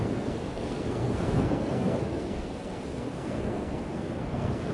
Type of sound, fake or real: fake